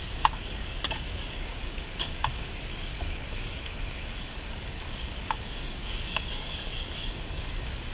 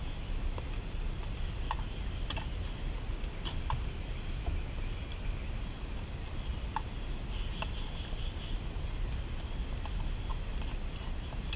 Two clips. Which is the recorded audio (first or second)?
second